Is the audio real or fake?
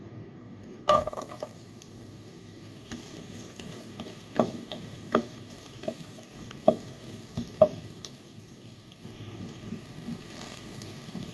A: fake